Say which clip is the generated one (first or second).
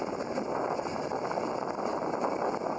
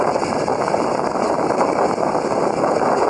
second